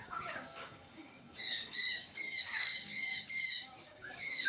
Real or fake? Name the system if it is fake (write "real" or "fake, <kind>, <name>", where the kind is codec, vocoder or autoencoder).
fake, codec, DAC